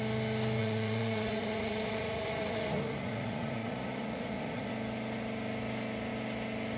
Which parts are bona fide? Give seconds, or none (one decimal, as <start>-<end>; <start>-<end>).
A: 0.0-0.6; 4.7-6.8